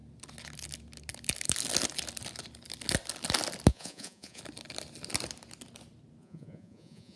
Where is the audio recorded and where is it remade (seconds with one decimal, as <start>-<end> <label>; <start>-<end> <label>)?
0.0-3.7 recorded; 3.7-4.4 remade; 4.4-6.2 recorded; 6.2-7.2 remade